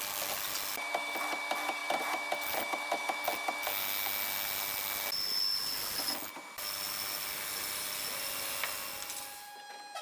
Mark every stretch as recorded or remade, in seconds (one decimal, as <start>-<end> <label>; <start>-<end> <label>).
0.0-10.0 recorded